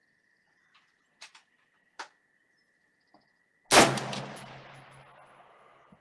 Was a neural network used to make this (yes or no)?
no